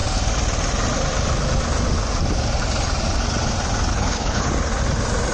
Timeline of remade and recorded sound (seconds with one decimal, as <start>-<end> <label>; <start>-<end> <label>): 0.0-3.9 recorded; 3.9-4.5 remade; 4.5-5.3 recorded